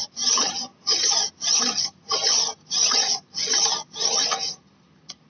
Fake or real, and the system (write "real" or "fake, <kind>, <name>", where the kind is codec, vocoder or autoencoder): real